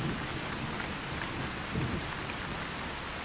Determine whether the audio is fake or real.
real